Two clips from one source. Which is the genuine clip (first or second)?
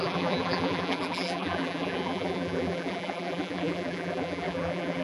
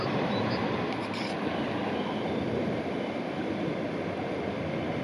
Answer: second